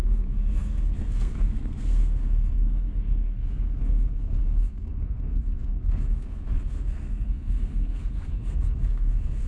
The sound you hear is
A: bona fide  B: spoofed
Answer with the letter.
B